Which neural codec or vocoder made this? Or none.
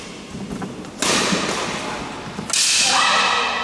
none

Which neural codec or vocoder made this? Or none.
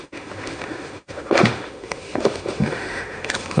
autoencoder, DAC-VAE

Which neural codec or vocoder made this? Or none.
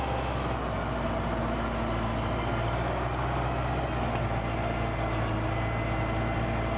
none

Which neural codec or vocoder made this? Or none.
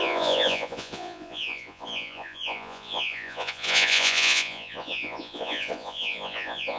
vocoder, Vocos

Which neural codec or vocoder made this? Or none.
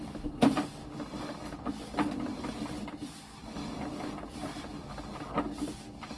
none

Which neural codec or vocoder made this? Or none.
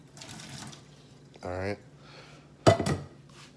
none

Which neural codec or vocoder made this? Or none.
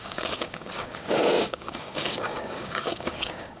codec, DAC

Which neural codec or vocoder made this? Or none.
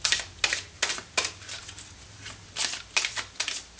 none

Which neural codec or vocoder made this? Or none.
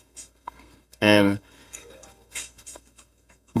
codec, SNAC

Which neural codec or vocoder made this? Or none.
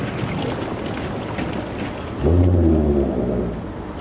none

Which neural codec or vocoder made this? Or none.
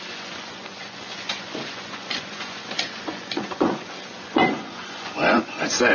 vocoder, Vocos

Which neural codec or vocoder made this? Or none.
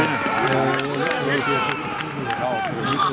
none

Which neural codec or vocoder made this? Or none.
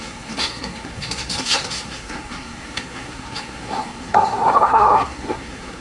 codec, SNAC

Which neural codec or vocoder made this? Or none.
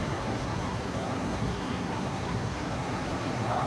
codec, SNAC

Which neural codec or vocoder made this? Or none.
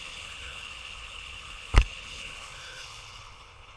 codec, HILCodec